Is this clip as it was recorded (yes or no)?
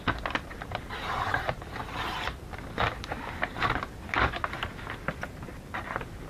yes